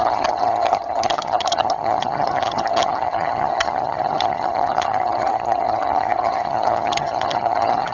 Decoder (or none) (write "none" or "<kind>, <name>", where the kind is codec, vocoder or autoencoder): vocoder, HiFi-GAN